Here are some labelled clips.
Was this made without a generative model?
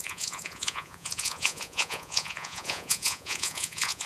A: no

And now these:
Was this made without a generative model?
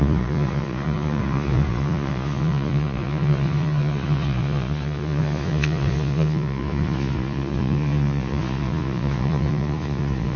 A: no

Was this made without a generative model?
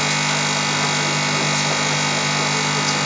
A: yes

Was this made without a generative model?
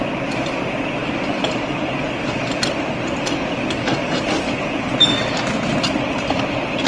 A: yes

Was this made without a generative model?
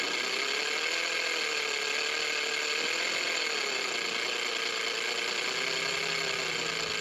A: yes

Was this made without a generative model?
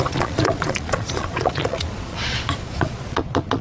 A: no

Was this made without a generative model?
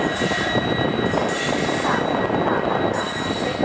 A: yes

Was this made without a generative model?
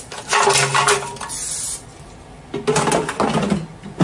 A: yes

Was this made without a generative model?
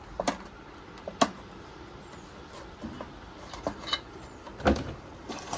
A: yes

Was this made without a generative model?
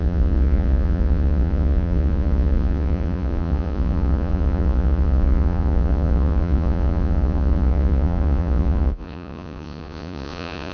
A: no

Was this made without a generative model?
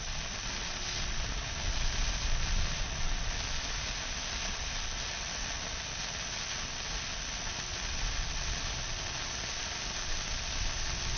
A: yes